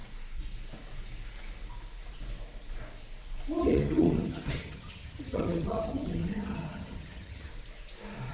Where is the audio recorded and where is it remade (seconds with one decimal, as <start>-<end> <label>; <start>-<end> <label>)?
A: 0.0-3.6 recorded; 3.6-7.5 remade; 7.5-8.3 recorded